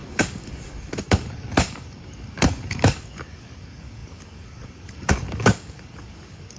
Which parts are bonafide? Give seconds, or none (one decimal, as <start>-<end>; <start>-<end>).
none